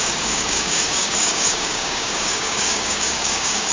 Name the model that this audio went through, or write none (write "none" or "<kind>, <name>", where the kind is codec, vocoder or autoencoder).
codec, DAC